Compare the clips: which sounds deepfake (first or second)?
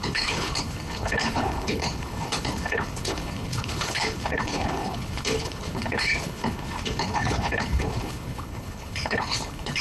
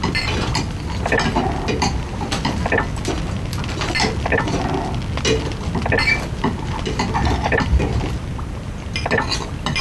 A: first